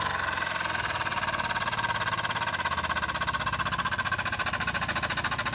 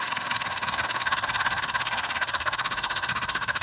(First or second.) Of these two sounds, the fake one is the second